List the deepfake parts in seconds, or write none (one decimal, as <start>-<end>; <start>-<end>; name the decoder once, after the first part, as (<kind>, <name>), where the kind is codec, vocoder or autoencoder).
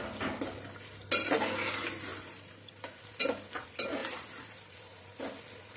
2.1-3.0 (vocoder, BigVGAN v2); 4.0-5.2